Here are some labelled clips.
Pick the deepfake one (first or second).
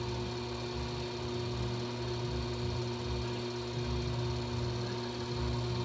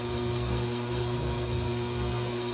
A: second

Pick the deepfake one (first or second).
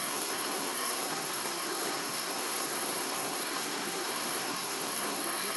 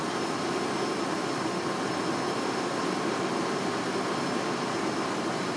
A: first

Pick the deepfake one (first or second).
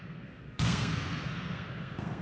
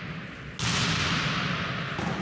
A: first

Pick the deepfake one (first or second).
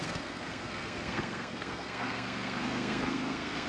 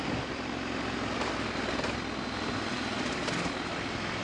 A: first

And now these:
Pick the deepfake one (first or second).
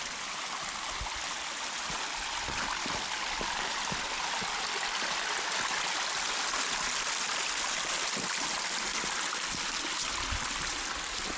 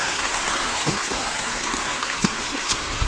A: second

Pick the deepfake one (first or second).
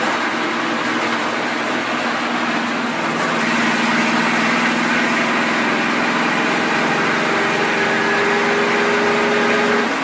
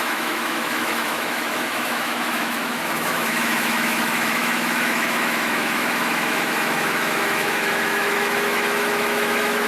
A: second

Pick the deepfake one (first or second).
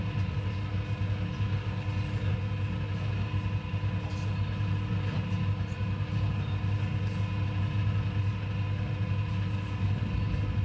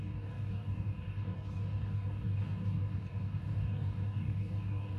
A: second